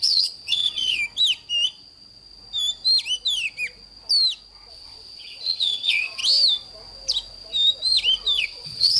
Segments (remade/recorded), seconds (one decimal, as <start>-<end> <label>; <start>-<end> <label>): 0.0-1.0 remade; 1.0-4.7 recorded; 4.7-6.2 remade; 6.2-8.4 recorded; 8.4-9.0 remade